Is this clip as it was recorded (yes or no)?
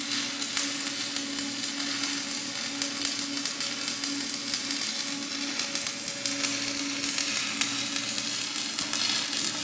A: yes